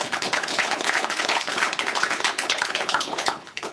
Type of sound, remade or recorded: remade